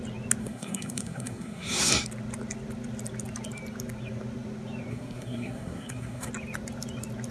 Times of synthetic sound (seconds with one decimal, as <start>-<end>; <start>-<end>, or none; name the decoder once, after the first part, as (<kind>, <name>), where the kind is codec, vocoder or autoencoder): 0.4-1.9 (codec, SNAC); 4.9-6.3